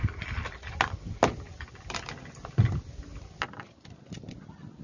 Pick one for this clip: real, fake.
real